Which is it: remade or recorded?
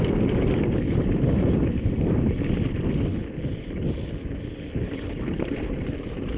recorded